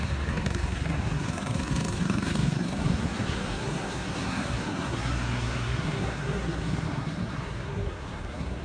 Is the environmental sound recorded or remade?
remade